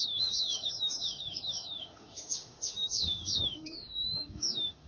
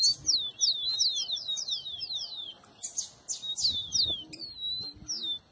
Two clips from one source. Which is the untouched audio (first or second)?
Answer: second